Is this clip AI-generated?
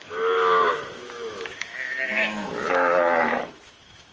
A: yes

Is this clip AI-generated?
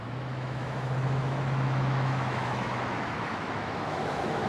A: yes